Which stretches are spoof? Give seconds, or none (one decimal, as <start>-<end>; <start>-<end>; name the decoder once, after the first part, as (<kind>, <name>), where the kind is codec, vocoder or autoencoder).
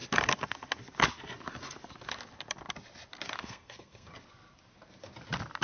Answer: 3.4-4.1 (codec, SNAC)